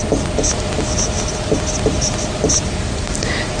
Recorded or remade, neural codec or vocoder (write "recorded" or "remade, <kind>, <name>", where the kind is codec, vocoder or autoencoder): recorded